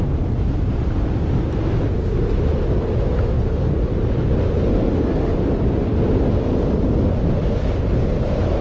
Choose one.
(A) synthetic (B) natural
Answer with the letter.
B